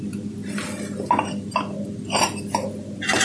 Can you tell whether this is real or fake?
real